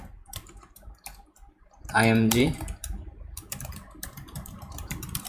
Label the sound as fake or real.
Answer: fake